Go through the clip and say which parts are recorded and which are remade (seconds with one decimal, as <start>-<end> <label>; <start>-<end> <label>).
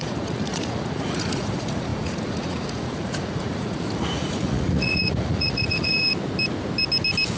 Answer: 0.0-6.1 remade; 6.1-7.4 recorded